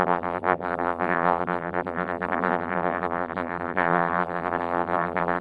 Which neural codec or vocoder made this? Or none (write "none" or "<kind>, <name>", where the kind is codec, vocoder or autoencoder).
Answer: vocoder, BigVGAN v2